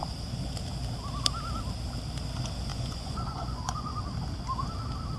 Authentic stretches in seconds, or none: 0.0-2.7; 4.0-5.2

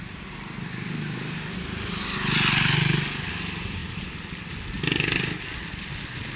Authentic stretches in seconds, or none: 0.0-6.4

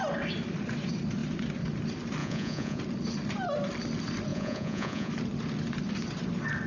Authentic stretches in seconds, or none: 0.0-2.2; 2.8-4.3; 5.1-6.7

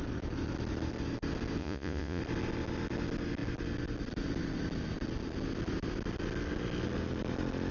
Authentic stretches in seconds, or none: 0.0-1.6; 2.2-7.7

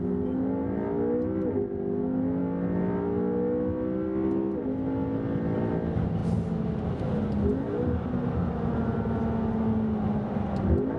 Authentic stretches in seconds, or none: 0.0-11.0

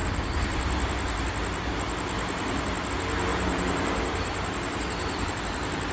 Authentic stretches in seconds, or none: 0.0-3.3; 5.4-5.9